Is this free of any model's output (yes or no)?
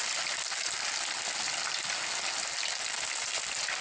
yes